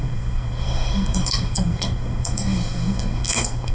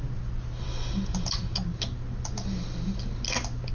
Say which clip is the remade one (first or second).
first